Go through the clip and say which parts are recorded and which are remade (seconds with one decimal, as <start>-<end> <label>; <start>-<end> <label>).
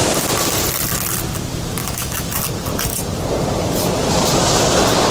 0.0-1.8 recorded; 1.8-2.4 remade; 2.4-5.1 recorded